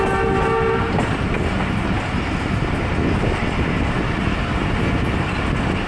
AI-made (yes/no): no